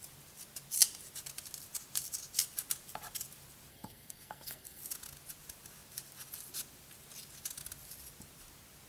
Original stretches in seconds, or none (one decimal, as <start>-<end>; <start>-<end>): 0.0-3.7; 4.8-8.9